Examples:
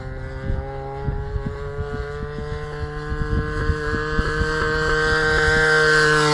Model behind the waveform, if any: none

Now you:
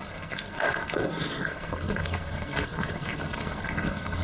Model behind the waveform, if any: codec, SNAC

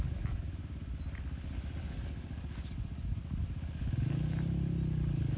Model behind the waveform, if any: none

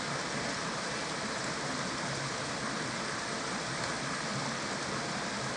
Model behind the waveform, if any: none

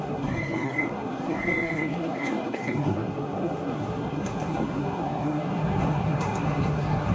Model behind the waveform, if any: codec, SNAC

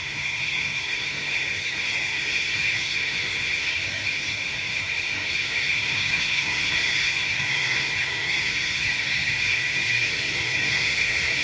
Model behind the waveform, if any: codec, SNAC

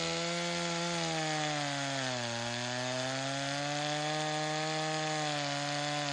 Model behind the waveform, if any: none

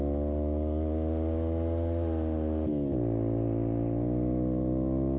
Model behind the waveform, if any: none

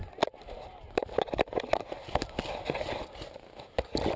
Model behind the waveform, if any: none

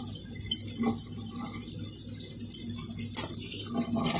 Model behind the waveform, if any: none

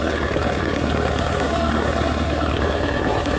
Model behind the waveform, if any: codec, SNAC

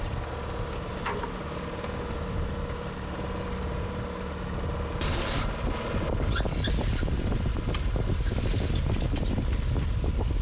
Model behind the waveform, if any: none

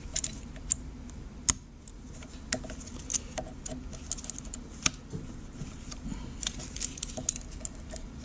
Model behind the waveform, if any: none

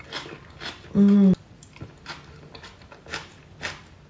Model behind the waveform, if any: none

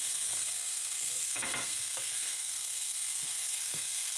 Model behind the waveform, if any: codec, SNAC